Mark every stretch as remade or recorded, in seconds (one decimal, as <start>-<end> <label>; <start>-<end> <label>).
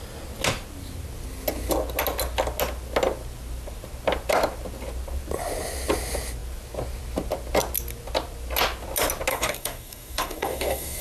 0.0-9.3 recorded; 9.3-11.0 remade